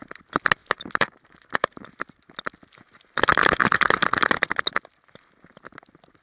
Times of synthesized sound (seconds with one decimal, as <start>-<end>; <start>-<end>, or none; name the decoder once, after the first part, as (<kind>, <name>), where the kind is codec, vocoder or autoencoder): 0.6-2.3 (vocoder, BigVGAN v2)